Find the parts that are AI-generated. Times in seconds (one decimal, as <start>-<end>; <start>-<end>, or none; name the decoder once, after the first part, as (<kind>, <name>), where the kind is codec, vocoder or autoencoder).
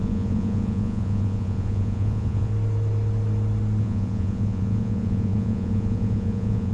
0.0-2.5 (vocoder, Vocos); 3.8-6.7